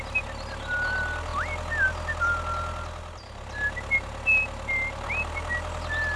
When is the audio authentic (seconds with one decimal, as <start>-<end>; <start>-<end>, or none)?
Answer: 0.0-6.2